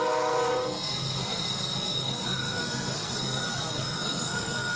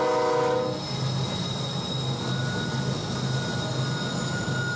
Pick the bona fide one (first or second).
second